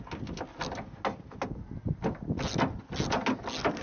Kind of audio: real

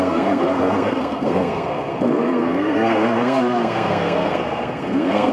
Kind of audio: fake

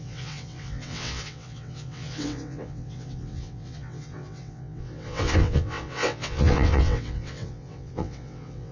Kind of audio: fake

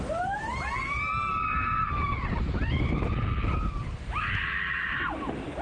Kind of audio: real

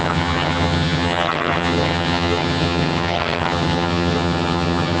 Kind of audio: fake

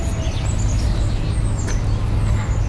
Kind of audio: real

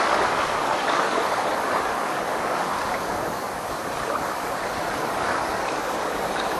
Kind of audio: fake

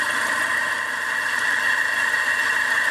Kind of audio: real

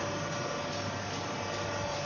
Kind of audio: real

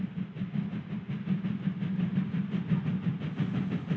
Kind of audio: real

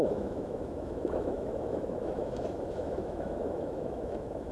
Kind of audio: fake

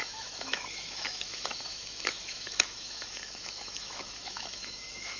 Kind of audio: fake